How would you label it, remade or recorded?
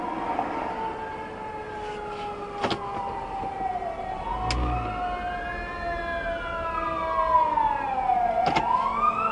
recorded